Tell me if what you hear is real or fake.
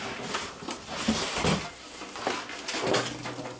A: real